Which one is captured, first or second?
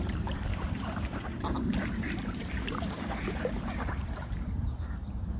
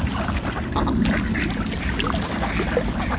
second